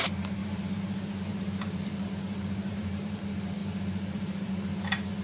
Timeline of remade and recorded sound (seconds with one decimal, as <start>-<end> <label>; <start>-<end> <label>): 0.0-0.4 recorded; 0.4-3.2 remade; 3.2-3.6 recorded; 3.6-4.5 remade; 4.5-5.2 recorded

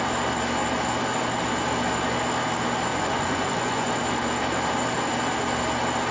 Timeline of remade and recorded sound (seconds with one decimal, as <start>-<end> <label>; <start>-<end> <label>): 0.0-2.9 recorded; 2.9-3.9 remade; 3.9-6.1 recorded